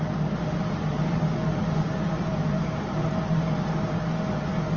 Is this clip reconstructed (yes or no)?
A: no